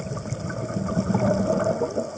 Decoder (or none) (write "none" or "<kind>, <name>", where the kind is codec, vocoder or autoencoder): none